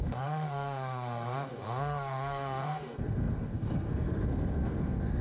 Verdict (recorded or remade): remade